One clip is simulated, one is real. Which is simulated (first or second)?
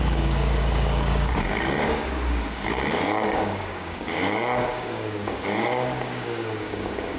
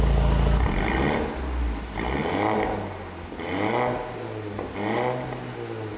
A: first